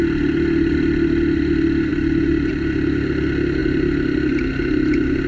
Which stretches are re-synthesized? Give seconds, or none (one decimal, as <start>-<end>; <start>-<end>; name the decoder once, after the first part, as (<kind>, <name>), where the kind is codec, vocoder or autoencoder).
none